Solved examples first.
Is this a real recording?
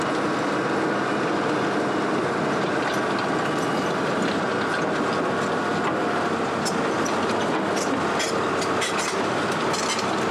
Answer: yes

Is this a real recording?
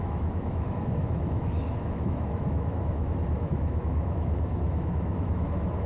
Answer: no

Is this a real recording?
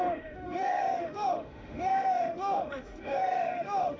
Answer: no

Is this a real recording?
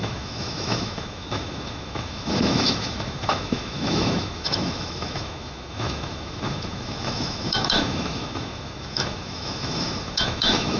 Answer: no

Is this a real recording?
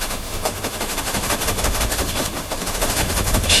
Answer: no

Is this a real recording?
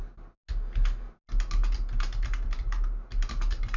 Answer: yes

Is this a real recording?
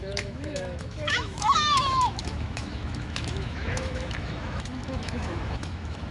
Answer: no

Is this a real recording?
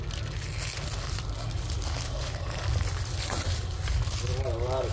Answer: yes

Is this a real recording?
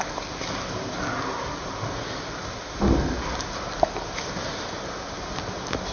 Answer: yes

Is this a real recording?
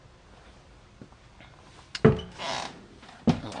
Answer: yes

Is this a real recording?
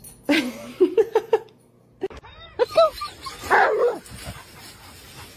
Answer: yes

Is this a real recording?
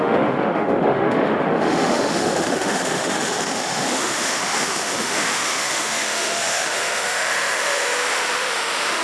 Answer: no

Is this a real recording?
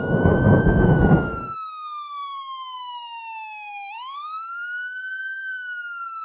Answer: no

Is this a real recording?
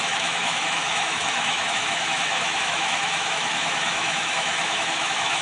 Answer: no